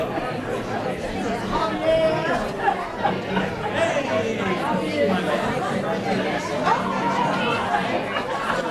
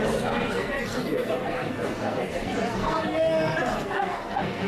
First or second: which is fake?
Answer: second